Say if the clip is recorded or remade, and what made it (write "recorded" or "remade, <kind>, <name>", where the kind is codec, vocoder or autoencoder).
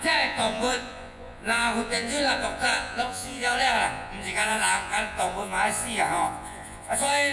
remade, vocoder, Vocos